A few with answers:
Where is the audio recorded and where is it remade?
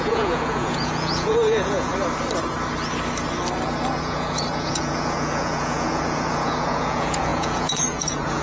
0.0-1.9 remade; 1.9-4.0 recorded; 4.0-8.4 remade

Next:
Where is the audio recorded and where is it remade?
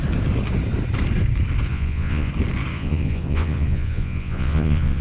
0.0-1.7 recorded; 1.7-2.3 remade; 2.3-2.7 recorded; 2.7-5.0 remade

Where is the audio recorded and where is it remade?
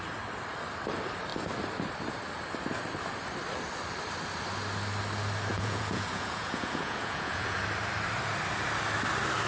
0.0-5.5 recorded; 5.5-7.6 remade; 7.6-9.5 recorded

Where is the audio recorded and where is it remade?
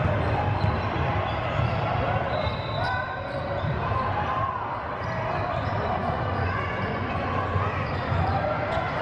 0.0-6.0 recorded; 6.0-9.0 remade